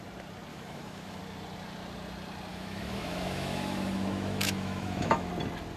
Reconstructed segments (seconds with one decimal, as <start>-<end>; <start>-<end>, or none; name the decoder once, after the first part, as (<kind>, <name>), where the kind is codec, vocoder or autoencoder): 0.5-1.2 (autoencoder, DAC-VAE); 2.5-5.3